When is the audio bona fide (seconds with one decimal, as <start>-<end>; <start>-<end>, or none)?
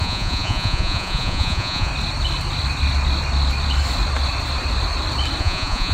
1.9-5.4